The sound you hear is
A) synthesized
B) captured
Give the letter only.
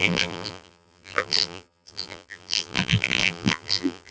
A